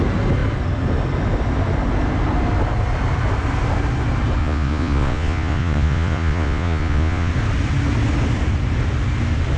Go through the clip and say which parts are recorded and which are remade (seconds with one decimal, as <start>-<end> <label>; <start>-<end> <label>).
0.0-4.4 recorded; 4.4-7.3 remade; 7.3-9.6 recorded